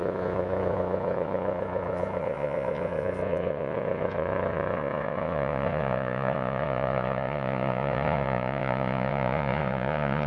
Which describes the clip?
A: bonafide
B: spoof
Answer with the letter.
B